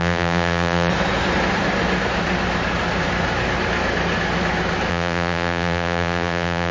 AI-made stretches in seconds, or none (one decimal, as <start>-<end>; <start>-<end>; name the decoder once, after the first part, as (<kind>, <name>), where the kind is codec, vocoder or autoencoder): 0.0-0.9 (vocoder, BigVGAN v2); 4.9-6.7